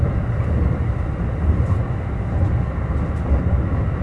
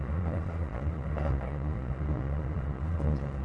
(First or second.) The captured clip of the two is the first